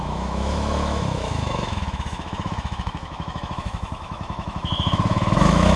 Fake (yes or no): yes